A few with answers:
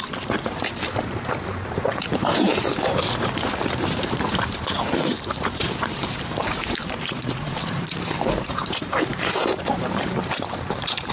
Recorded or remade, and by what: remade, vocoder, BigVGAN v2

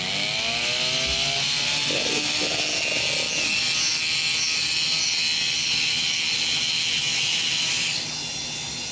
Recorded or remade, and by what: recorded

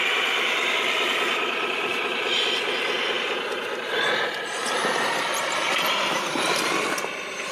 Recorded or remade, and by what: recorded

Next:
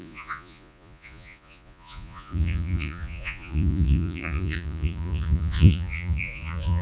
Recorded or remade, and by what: remade, vocoder, Vocos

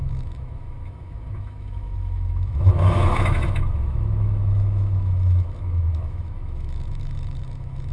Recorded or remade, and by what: remade, autoencoder, DAC-VAE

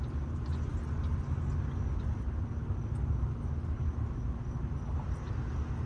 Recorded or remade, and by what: recorded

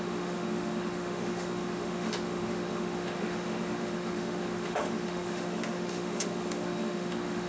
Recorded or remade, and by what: remade, autoencoder, DAC-VAE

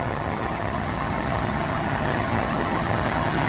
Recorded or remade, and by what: remade, vocoder, HiFi-GAN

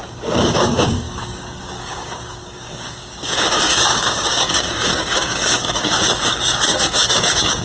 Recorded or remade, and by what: remade, codec, DAC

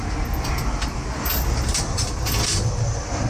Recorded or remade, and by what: recorded